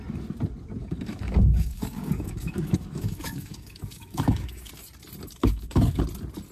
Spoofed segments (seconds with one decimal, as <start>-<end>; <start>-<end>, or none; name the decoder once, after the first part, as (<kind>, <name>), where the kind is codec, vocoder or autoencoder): 0.8-4.7 (codec, DAC); 5.4-6.0